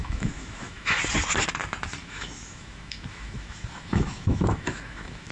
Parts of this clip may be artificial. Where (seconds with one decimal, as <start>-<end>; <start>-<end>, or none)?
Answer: 0.0-1.0; 2.0-5.3